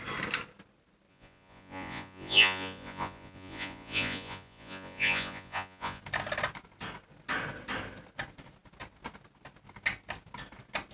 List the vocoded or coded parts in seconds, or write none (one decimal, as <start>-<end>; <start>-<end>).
1.1-6.0